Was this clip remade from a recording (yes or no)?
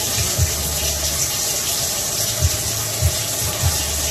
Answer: no